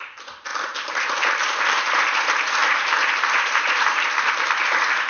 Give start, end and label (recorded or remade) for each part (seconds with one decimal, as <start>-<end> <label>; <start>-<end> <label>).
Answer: 0.0-5.1 recorded

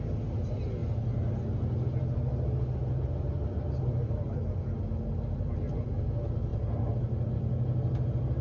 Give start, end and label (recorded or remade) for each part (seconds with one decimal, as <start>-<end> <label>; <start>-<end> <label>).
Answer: 0.0-8.4 recorded

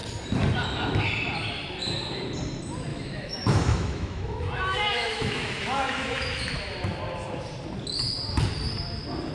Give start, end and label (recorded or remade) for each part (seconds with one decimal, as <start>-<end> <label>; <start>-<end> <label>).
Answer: 0.0-2.9 recorded; 2.9-6.5 remade; 6.5-9.3 recorded

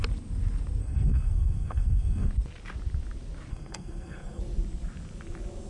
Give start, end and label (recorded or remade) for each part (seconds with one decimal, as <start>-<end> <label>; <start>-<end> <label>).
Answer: 0.0-0.8 recorded; 0.8-2.3 remade; 2.3-3.5 recorded; 3.5-4.4 remade; 4.4-5.7 recorded

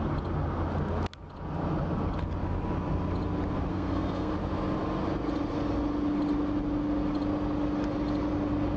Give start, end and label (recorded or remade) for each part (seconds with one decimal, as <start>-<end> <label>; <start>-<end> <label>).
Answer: 0.0-3.7 recorded; 3.7-4.3 remade; 4.3-8.8 recorded

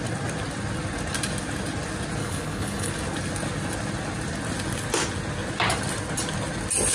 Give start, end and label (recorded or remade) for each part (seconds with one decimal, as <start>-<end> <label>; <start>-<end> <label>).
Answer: 0.0-2.2 recorded; 2.2-2.9 remade; 2.9-6.9 recorded

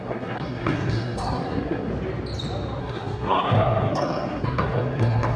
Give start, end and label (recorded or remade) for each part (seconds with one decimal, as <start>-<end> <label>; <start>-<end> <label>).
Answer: 0.0-1.9 remade; 1.9-2.8 recorded; 2.8-5.4 remade